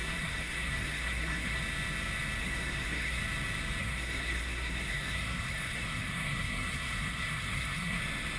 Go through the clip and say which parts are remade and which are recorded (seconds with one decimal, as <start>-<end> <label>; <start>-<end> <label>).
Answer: 0.0-1.6 remade; 1.6-2.4 recorded; 2.4-3.2 remade; 3.2-3.8 recorded; 3.8-8.0 remade; 8.0-8.4 recorded